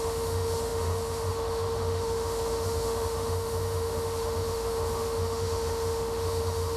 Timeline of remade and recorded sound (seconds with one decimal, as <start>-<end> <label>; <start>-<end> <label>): 0.0-6.8 remade